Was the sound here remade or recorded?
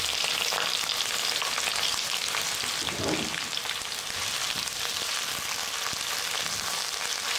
recorded